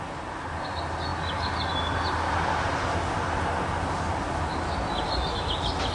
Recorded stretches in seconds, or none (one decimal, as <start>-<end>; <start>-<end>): 0.0-5.9